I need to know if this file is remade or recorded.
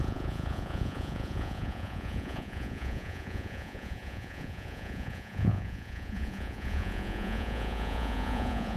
remade